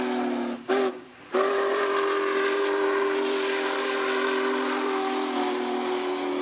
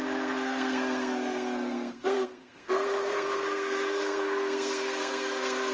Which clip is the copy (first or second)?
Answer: second